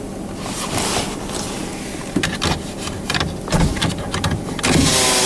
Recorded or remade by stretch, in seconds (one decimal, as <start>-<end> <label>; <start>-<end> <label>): 0.0-5.3 recorded